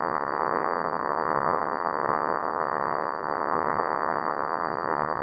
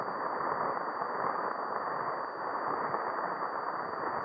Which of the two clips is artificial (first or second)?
first